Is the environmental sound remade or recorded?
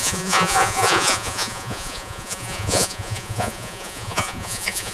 remade